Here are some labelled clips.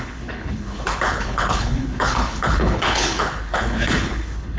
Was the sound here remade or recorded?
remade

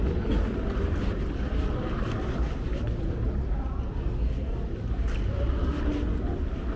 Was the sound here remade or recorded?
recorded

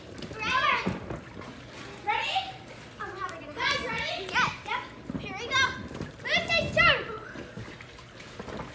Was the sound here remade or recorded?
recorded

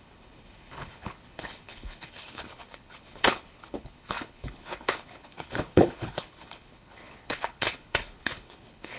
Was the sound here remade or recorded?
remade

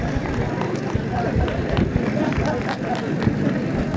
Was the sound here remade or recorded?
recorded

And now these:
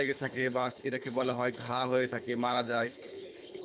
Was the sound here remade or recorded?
remade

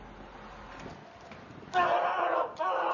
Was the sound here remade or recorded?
recorded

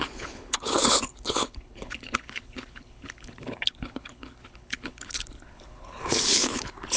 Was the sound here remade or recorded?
remade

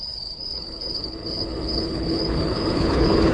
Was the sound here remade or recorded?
remade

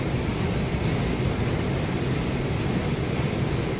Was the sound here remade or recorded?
recorded